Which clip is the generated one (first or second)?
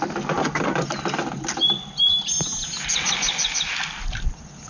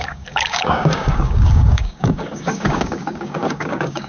second